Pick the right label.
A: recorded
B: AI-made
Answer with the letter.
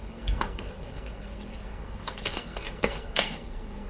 B